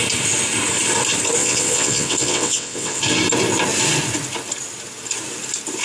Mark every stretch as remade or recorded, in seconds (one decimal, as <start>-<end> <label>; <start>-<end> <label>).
0.0-1.4 recorded; 1.4-3.0 remade; 3.0-5.8 recorded